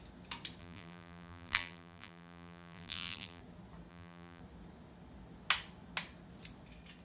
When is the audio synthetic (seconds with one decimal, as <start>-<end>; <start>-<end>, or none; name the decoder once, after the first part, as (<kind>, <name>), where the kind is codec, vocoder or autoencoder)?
0.6-3.4 (vocoder, BigVGAN v2); 3.9-4.4